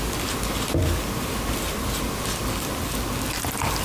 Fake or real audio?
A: real